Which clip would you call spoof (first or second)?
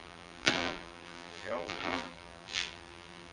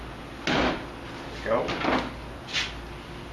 first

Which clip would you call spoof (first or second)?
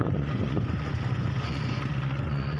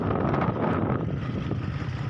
first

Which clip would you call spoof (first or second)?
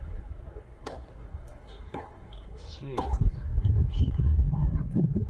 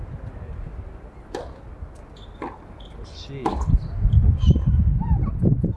first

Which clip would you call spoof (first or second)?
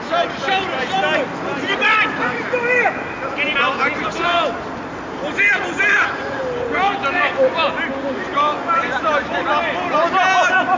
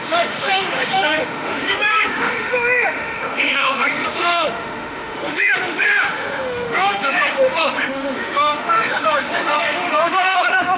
second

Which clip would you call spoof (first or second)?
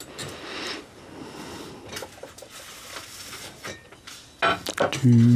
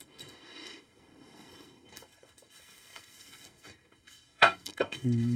second